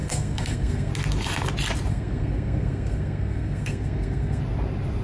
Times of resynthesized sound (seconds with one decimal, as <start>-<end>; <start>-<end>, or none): 0.0-0.9; 1.9-4.4